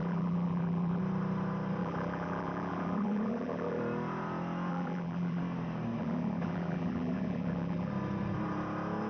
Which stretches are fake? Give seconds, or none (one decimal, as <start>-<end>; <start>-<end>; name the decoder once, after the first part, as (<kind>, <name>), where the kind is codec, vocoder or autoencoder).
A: 0.0-1.0 (vocoder, BigVGAN v2); 1.8-3.8; 4.7-5.4; 6.0-7.9